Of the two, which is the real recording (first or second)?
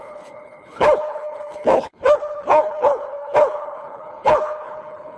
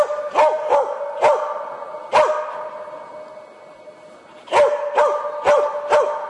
second